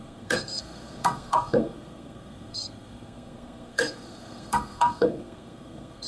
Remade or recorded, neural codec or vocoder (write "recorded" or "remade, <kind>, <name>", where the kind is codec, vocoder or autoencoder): remade, codec, SNAC